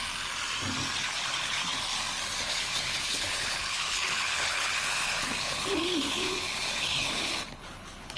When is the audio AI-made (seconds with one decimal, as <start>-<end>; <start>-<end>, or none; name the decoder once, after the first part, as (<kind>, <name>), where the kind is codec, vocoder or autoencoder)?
1.0-1.7 (codec, HILCodec); 2.4-8.2